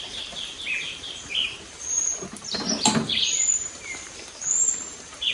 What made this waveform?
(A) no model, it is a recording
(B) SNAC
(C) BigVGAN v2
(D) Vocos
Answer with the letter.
C